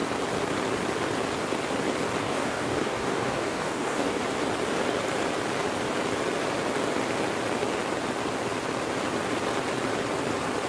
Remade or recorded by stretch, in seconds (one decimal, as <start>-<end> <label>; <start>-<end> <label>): 0.0-2.2 recorded; 2.2-4.2 remade; 4.2-10.7 recorded

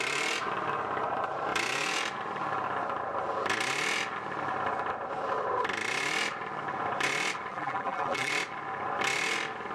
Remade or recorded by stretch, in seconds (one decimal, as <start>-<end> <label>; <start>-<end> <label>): 0.0-7.5 recorded; 7.5-8.3 remade; 8.3-9.7 recorded

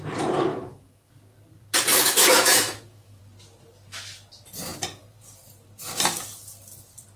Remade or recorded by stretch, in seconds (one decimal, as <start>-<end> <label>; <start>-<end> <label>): 0.0-0.5 recorded; 0.5-1.1 remade; 1.1-1.9 recorded; 1.9-3.2 remade; 3.2-7.2 recorded